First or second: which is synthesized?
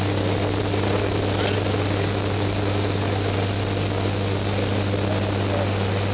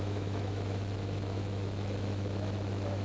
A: second